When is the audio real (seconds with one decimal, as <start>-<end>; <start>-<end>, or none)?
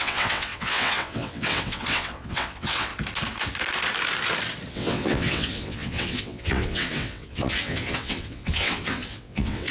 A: 2.9-4.7